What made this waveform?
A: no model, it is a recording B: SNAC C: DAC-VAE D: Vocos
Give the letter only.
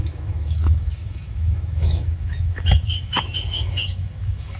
C